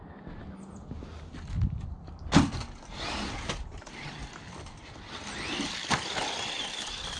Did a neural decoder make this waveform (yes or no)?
no